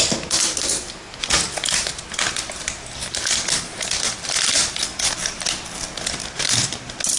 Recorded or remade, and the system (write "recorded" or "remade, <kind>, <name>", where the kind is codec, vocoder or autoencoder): recorded